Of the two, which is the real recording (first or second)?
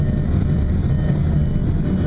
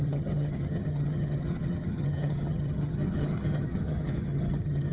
first